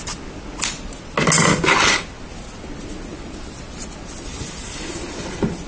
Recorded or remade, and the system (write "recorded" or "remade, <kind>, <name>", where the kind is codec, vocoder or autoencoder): recorded